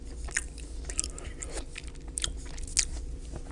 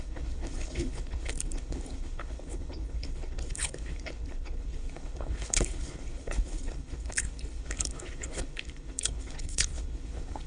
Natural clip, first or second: first